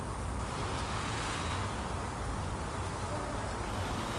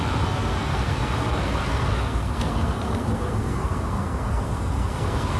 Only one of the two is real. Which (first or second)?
first